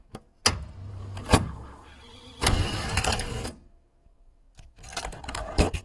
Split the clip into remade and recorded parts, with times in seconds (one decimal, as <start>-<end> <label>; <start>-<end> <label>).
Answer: 0.0-0.4 remade; 0.4-0.9 recorded; 0.9-1.9 remade; 1.9-2.5 recorded; 2.5-5.8 remade